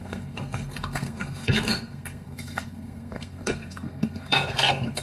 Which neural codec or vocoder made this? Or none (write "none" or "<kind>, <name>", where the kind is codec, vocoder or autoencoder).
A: codec, SNAC